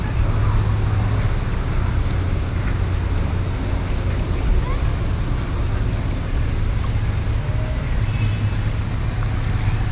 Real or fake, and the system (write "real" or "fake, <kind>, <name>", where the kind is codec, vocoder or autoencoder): real